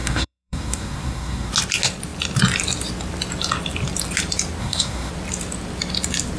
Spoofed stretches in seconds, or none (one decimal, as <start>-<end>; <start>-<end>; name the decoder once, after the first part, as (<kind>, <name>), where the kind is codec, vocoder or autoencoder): 0.0-1.5 (codec, SNAC); 4.6-5.1